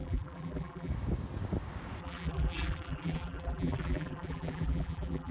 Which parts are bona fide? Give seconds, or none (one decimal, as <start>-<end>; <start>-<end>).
0.9-2.0